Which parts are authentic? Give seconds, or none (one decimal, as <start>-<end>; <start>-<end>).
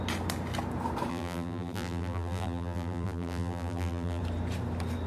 0.0-1.1; 4.2-5.1